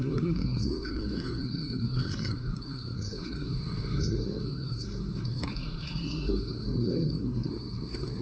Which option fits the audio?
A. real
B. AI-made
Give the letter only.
B